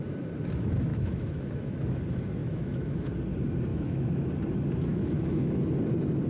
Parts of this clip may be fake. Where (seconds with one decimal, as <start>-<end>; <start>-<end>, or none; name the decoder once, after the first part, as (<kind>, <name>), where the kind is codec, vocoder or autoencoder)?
0.9-2.0 (autoencoder, DAC-VAE); 2.4-3.1; 3.7-4.3; 4.9-5.6